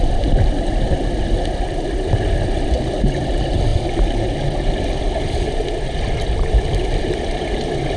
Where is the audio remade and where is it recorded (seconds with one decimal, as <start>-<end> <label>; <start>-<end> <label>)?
0.0-8.0 recorded